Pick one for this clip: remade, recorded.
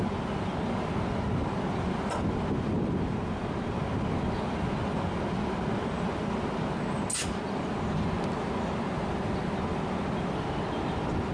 recorded